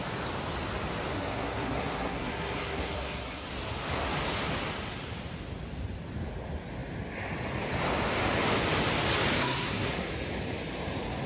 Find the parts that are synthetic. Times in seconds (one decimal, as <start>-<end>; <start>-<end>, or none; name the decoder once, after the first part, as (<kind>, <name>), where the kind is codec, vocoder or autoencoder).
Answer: 1.1-3.5 (codec, SNAC); 9.4-10.1